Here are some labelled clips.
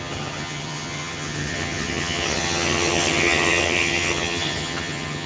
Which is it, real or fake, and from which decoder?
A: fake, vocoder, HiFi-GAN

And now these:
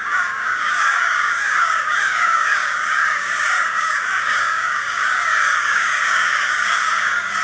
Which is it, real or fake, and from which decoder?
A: fake, codec, DAC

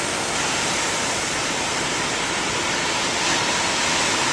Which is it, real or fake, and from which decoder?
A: real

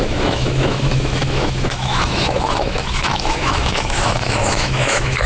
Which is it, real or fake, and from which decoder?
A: fake, autoencoder, DAC-VAE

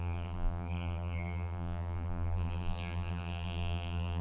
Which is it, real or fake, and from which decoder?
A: fake, vocoder, BigVGAN v2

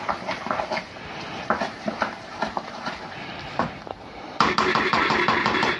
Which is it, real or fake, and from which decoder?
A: fake, vocoder, BigVGAN v2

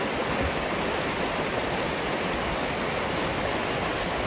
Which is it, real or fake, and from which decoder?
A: real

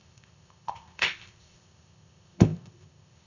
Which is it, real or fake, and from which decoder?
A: fake, codec, ZipCodec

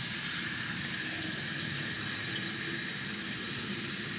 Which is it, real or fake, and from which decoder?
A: real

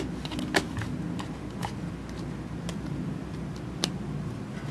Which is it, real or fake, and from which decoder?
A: real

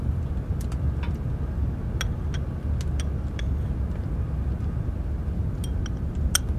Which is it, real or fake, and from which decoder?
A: real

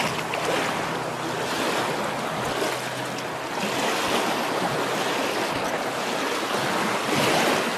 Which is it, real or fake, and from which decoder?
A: real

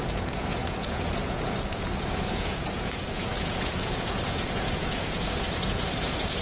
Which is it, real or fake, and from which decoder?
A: fake, vocoder, Vocos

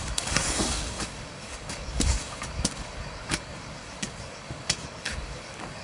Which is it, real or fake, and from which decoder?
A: fake, codec, DAC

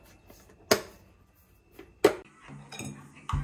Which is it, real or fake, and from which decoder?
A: real